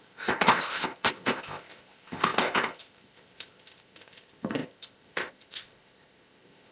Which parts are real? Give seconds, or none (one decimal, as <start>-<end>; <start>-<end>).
none